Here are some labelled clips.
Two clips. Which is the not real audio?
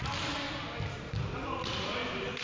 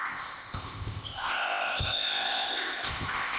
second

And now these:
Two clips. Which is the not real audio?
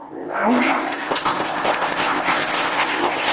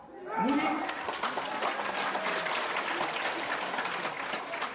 first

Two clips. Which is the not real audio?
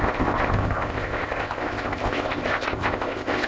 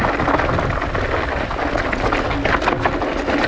first